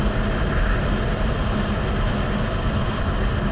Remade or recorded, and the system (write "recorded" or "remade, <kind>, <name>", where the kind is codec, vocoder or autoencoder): recorded